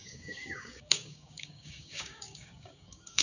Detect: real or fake fake